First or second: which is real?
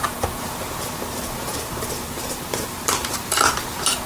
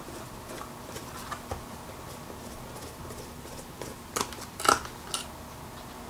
second